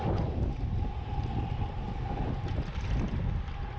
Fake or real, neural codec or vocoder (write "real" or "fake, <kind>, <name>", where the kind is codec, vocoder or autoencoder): real